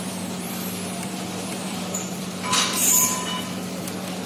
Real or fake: fake